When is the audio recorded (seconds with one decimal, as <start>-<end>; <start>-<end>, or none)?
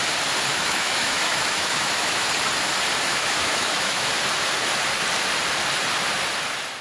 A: 0.0-0.5; 2.3-3.1; 4.1-6.8